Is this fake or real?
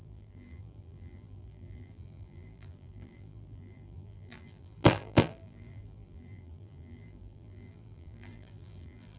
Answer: fake